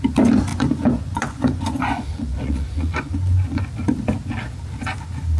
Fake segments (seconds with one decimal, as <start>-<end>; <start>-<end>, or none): 0.5-3.7